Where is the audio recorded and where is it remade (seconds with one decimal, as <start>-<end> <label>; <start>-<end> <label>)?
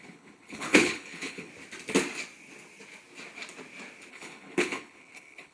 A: 0.0-1.5 remade; 1.5-4.1 recorded; 4.1-5.5 remade